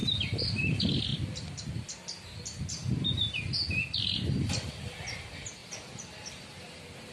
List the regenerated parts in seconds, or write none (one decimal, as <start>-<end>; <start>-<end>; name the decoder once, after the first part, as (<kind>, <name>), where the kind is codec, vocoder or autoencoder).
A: 0.0-1.1 (vocoder, BigVGAN v2); 4.4-5.6